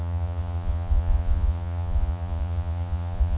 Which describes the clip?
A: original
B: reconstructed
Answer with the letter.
B